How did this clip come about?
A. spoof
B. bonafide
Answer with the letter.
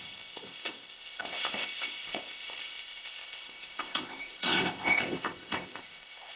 A